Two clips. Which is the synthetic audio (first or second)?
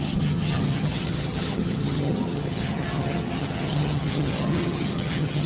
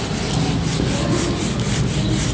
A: first